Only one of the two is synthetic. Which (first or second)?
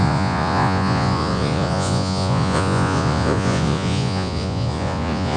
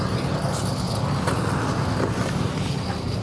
first